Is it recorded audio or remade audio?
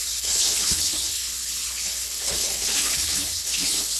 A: remade